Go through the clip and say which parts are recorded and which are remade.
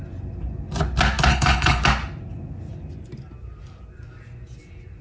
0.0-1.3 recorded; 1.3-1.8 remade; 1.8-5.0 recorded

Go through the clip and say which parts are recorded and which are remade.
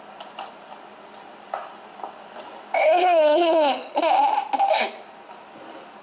0.0-2.8 recorded; 2.8-4.0 remade; 4.0-6.0 recorded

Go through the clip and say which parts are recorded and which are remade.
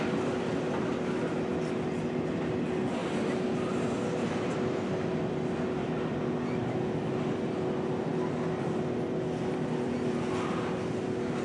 0.0-11.4 recorded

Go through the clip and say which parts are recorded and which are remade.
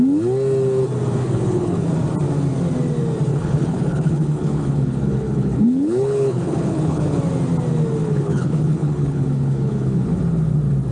0.0-1.2 recorded; 1.2-1.9 remade; 1.9-3.3 recorded; 3.3-7.2 remade; 7.2-8.0 recorded; 8.0-10.2 remade; 10.2-10.9 recorded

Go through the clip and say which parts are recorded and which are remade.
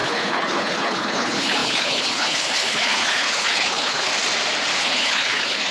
0.0-4.1 remade; 4.1-4.8 recorded; 4.8-5.7 remade